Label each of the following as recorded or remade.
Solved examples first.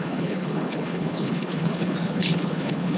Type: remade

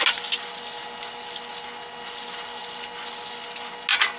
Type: recorded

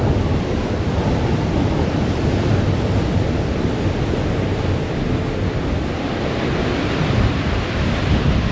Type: remade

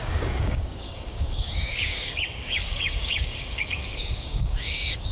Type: remade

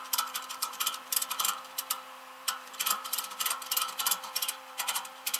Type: remade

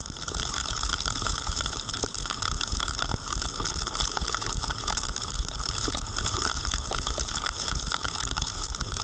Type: remade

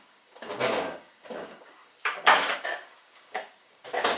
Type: remade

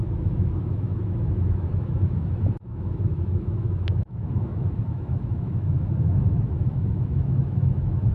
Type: remade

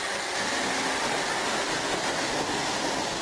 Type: recorded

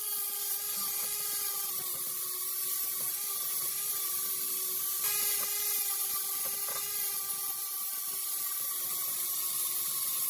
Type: recorded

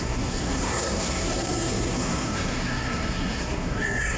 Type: remade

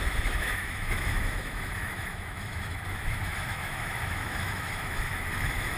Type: remade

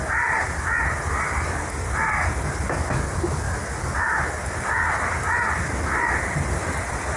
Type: recorded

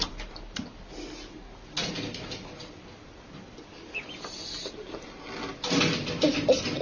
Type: recorded